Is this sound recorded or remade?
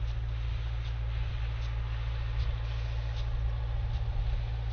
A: recorded